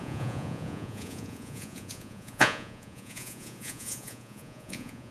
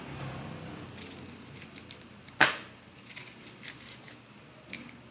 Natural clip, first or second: second